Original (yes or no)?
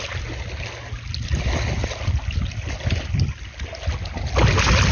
yes